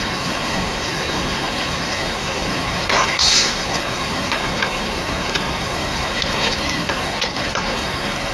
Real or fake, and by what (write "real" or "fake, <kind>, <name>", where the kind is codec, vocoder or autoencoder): fake, codec, SNAC